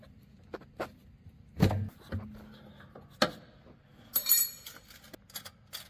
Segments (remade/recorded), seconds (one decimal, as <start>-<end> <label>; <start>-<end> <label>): 0.0-5.9 recorded